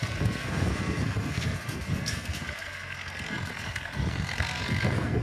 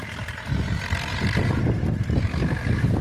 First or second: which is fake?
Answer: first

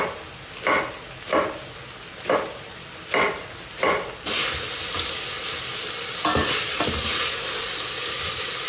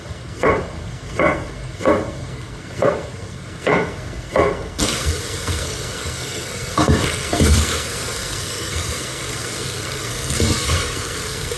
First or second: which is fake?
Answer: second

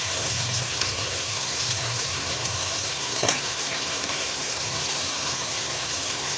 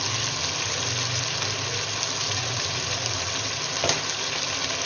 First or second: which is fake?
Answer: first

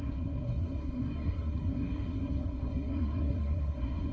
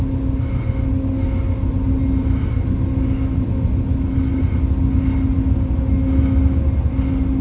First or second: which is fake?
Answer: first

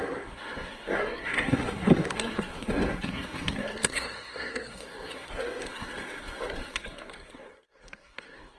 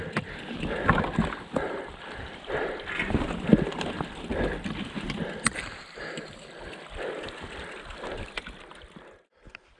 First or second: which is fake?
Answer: first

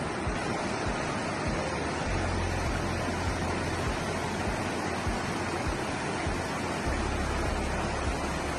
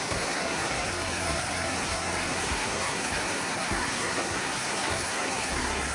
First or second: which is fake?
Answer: second